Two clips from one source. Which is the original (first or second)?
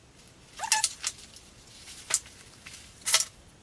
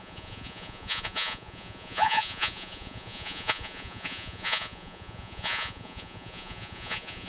first